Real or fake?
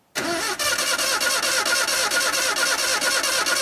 real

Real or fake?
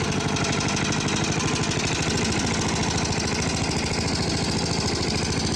real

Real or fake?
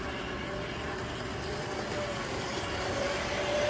real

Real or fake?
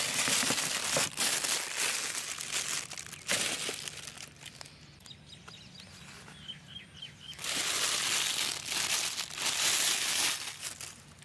real